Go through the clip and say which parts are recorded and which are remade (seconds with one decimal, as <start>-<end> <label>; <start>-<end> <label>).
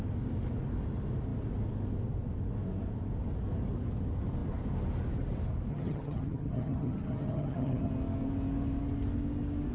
0.0-5.7 recorded; 5.7-7.9 remade; 7.9-9.7 recorded